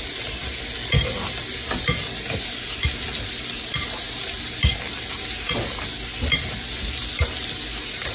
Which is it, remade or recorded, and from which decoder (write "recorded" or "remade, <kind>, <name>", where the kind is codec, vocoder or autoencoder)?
recorded